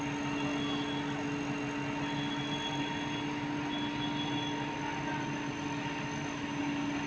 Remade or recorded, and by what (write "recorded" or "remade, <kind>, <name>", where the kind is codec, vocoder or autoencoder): recorded